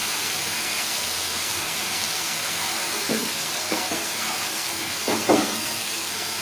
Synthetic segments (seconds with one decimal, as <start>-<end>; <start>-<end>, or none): 0.0-6.4